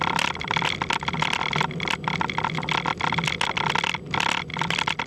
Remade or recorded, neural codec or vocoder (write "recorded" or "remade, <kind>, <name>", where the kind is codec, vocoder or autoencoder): recorded